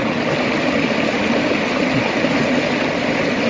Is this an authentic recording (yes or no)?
no